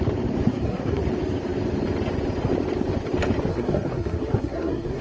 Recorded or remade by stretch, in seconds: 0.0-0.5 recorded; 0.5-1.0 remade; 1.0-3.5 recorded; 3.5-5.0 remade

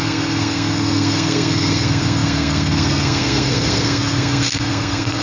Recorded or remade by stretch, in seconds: 0.0-5.2 remade

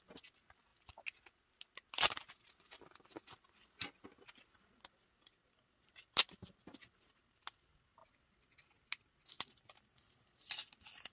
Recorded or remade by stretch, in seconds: 0.0-11.1 recorded

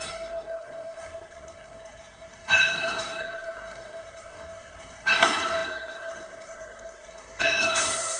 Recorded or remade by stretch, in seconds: 0.0-8.2 remade

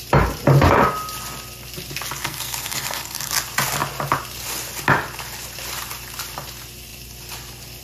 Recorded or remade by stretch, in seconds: 0.0-2.2 recorded; 2.2-3.3 remade; 3.3-7.8 recorded

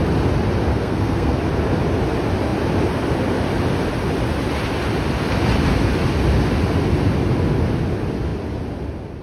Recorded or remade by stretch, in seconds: 0.0-0.7 recorded; 0.7-1.4 remade; 1.4-9.2 recorded

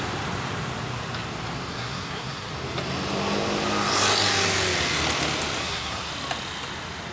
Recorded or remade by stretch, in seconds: 0.0-1.7 recorded; 1.7-2.5 remade; 2.5-5.6 recorded; 5.6-6.1 remade; 6.1-7.1 recorded